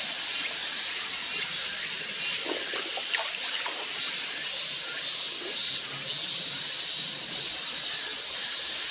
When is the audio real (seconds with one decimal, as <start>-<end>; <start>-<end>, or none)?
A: 0.0-8.9